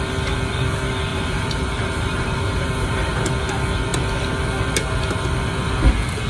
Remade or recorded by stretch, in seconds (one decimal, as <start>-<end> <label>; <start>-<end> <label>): 0.0-1.1 recorded; 1.1-3.3 remade; 3.3-6.3 recorded